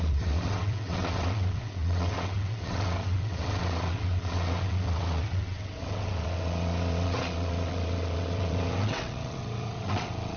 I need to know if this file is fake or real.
fake